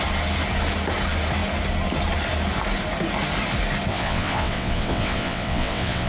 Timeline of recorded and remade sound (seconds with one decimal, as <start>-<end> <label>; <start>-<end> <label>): 0.0-3.9 recorded; 3.9-6.1 remade

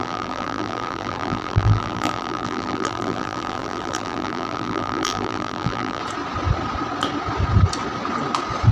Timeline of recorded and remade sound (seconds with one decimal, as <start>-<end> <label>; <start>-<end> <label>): 0.0-6.0 remade; 6.0-8.7 recorded

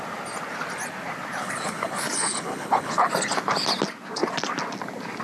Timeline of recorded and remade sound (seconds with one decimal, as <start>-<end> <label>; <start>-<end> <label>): 0.0-1.4 recorded; 1.4-3.1 remade; 3.1-5.2 recorded

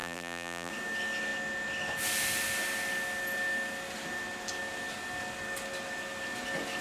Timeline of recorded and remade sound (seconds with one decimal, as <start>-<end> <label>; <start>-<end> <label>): 0.0-0.7 remade; 0.7-6.8 recorded